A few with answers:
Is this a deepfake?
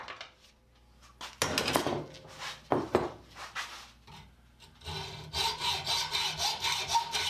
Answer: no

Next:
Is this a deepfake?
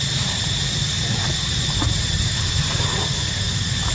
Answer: no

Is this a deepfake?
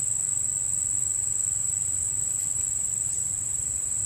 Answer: no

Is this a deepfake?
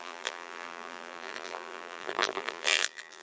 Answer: yes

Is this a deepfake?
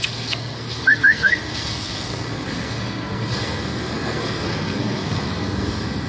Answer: yes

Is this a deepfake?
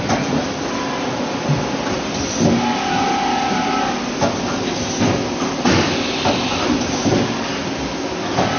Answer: no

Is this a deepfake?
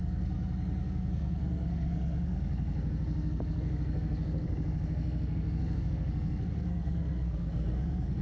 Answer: yes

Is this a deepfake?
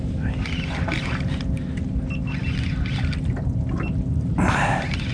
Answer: no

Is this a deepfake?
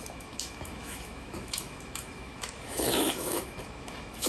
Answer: yes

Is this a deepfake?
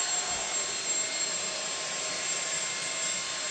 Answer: yes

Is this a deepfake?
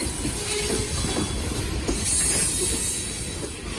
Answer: no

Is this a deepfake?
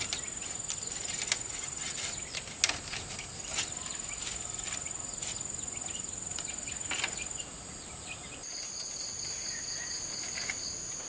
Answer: no